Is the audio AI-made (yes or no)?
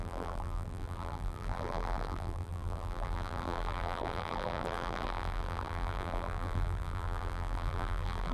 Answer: yes